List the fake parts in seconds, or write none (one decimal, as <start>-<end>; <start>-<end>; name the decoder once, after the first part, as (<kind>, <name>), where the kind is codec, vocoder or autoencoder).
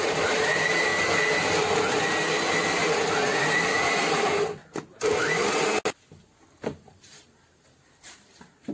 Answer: 0.0-0.9 (vocoder, BigVGAN v2); 3.4-4.6; 6.5-8.7